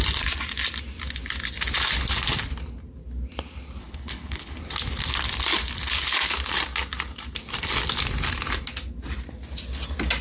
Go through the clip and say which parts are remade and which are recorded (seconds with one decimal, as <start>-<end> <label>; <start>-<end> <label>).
0.0-3.8 recorded; 3.8-4.6 remade; 4.6-10.2 recorded